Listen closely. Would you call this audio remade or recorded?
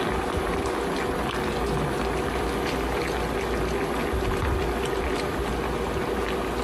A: recorded